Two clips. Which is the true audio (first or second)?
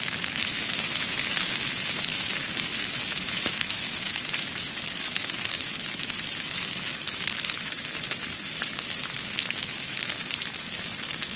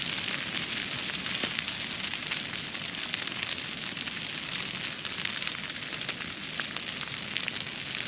second